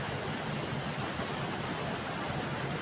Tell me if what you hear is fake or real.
real